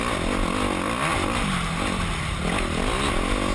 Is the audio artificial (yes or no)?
no